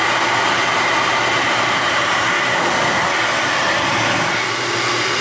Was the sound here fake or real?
real